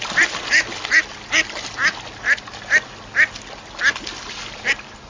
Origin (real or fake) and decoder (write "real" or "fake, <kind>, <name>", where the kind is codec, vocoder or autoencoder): real